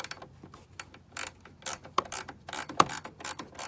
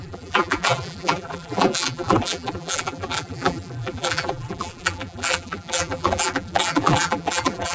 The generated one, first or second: second